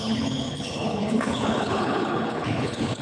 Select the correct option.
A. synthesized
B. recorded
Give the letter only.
A